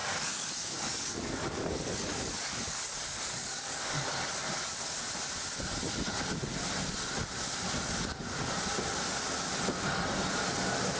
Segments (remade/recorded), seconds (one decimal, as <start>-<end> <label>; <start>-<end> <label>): 0.0-4.1 remade; 4.1-11.0 recorded